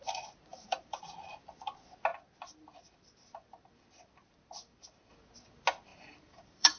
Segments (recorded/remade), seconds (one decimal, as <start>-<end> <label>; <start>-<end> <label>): 0.0-0.5 recorded; 0.5-1.0 remade; 1.0-5.9 recorded; 5.9-6.8 remade